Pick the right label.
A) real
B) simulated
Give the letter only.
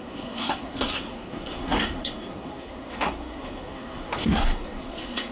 B